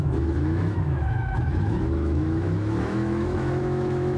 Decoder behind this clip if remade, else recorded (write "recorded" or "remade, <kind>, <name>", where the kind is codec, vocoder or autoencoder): remade, autoencoder, DAC-VAE